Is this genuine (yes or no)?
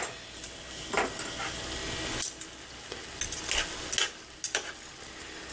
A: yes